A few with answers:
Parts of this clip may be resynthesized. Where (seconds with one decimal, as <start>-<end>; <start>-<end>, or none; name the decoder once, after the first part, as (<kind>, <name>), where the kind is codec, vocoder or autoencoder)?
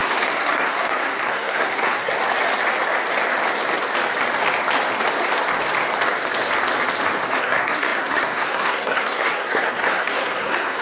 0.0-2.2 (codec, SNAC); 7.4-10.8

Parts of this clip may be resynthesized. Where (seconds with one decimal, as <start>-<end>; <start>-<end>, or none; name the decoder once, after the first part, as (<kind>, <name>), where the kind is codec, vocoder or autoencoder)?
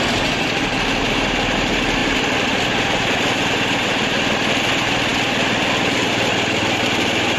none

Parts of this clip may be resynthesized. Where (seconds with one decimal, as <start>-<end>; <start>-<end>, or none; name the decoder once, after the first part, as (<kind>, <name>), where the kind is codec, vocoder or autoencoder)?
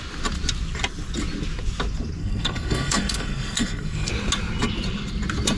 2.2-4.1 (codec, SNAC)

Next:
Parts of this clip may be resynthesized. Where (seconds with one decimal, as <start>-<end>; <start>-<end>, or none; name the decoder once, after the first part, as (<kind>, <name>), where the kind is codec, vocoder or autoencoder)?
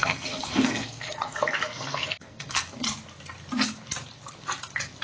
0.0-2.7 (codec, SNAC)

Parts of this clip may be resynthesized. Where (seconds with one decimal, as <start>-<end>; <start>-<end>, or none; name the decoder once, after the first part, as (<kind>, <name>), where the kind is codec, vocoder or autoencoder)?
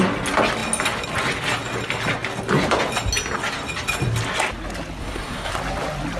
5.0-5.5 (codec, SNAC)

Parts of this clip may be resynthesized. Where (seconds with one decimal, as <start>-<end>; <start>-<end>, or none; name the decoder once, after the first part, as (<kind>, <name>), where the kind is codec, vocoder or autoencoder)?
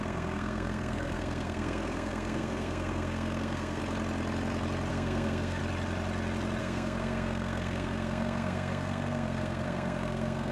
0.0-3.8 (codec, SNAC); 4.9-5.6; 6.6-10.5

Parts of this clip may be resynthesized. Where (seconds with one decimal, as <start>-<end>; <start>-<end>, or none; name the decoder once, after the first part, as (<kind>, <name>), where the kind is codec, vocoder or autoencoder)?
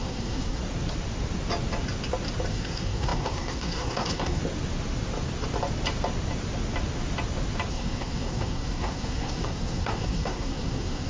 0.0-0.6 (codec, SNAC); 2.5-4.4; 7.7-11.1